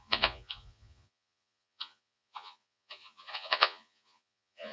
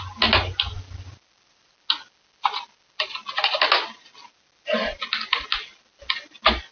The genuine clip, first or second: second